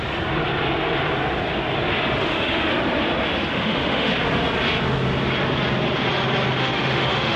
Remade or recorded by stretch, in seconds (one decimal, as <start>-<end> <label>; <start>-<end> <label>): 0.0-2.2 recorded; 2.2-2.7 remade; 2.7-3.5 recorded; 3.5-4.1 remade; 4.1-6.6 recorded; 6.6-7.4 remade